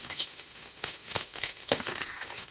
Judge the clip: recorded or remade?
remade